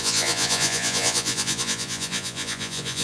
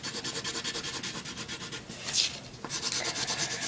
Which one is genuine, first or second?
second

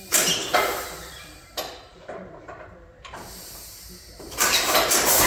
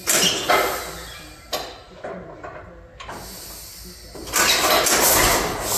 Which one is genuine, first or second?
second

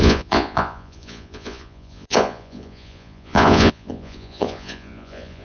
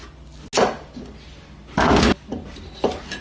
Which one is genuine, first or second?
second